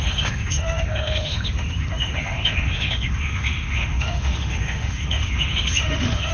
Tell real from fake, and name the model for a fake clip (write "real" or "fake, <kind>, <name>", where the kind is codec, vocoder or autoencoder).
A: fake, autoencoder, DAC-VAE